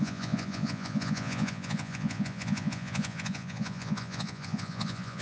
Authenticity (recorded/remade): remade